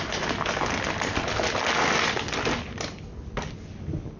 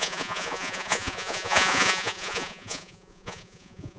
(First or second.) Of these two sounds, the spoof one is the second